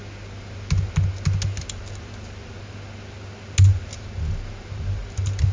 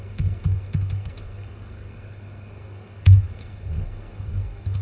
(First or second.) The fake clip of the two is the second